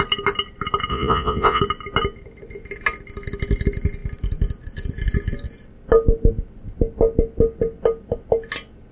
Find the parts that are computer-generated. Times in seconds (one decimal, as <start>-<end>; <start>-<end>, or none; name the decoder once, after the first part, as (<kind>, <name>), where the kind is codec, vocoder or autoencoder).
0.9-1.6 (vocoder, Vocos)